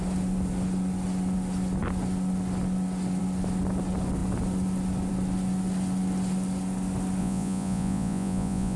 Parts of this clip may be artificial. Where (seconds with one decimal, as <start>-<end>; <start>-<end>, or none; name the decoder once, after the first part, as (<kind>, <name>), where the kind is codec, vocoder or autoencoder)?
7.2-8.8 (vocoder, Vocos)